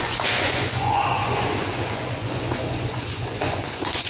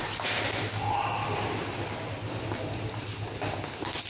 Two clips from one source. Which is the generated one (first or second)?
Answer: first